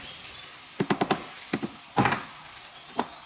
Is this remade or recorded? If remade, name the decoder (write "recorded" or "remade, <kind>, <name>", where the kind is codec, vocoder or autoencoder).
recorded